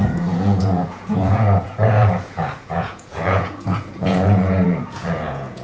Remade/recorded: remade